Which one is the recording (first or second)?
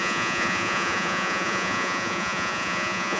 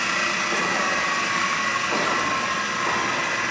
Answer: second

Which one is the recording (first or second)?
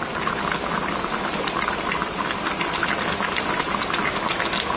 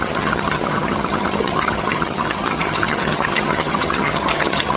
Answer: first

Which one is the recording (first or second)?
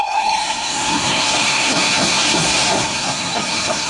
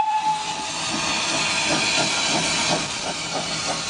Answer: second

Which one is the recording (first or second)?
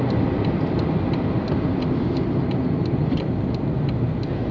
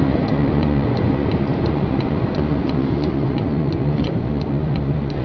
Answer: first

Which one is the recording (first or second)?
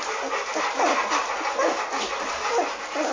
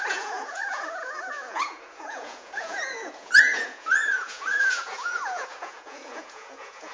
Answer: first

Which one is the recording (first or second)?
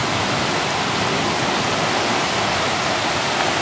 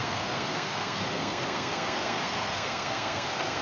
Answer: first